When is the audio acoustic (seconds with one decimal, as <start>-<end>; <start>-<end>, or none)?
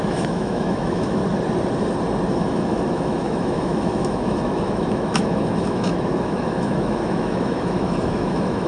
1.2-2.3